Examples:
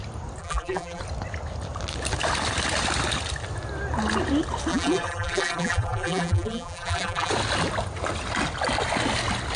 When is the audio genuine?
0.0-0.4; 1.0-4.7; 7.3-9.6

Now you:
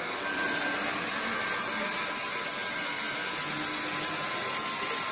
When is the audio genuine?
0.0-5.1

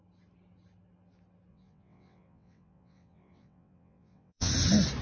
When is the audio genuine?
0.0-1.5; 4.5-5.0